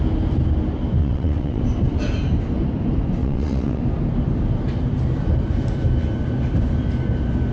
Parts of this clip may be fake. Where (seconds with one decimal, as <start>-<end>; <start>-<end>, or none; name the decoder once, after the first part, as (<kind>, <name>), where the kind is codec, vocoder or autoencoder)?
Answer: 1.0-1.6 (vocoder, WaveNeXt); 3.2-3.8